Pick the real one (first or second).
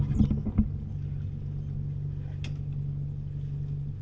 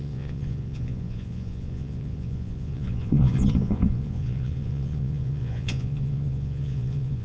first